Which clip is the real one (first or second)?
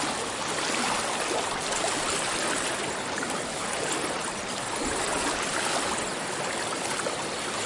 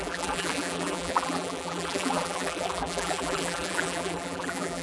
first